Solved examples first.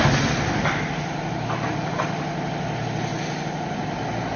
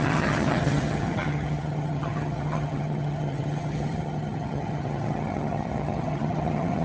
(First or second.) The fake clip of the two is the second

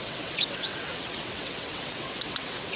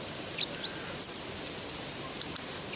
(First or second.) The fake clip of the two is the first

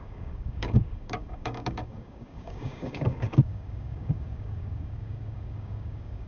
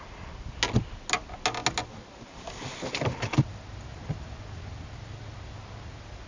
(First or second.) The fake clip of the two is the first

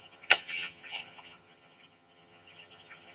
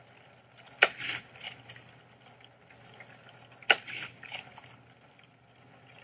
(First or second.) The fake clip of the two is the first